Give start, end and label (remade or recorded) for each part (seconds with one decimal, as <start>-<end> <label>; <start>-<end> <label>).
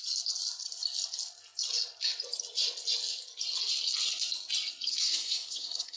0.0-4.9 recorded; 4.9-6.0 remade